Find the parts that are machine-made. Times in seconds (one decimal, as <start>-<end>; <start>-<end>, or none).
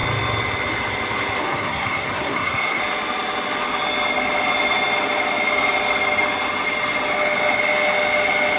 1.4-2.8